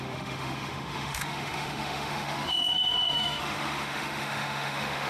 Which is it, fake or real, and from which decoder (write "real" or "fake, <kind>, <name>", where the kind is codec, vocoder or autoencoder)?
fake, autoencoder, DAC-VAE